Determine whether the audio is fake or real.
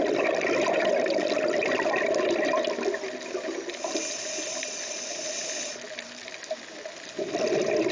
real